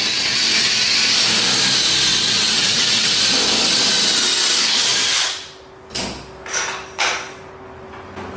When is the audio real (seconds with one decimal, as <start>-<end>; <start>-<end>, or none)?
0.0-2.1; 3.1-8.4